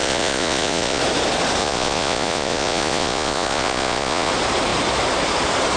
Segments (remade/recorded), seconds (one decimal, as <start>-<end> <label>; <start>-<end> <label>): 0.0-1.0 remade; 1.0-1.6 recorded; 1.6-4.3 remade; 4.3-5.8 recorded